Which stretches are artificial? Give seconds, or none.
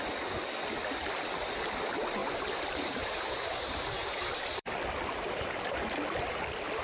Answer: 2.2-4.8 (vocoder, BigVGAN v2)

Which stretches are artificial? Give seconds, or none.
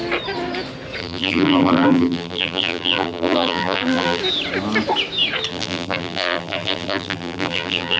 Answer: 1.0-4.2 (vocoder, BigVGAN v2); 5.5-8.0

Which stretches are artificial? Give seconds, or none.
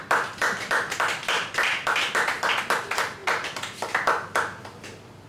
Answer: 0.4-2.5 (vocoder, BigVGAN v2); 3.2-3.8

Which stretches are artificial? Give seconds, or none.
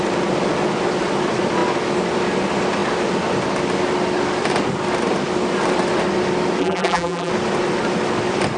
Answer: 6.6-7.3 (vocoder, BigVGAN v2)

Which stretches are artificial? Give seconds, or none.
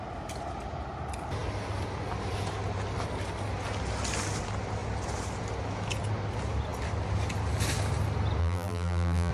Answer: 8.4-9.3 (vocoder, BigVGAN v2)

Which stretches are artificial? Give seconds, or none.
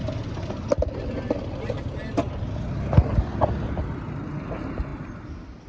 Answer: 0.0-0.7 (vocoder, BigVGAN v2); 4.9-5.7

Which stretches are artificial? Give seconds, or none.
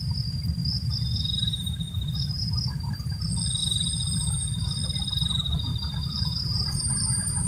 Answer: 0.6-3.2 (vocoder, BigVGAN v2); 3.6-4.6; 5.7-7.5